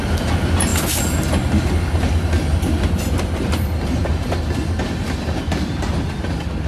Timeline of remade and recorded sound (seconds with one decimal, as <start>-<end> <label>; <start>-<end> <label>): 0.0-6.7 recorded